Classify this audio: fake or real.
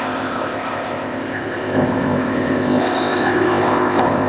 fake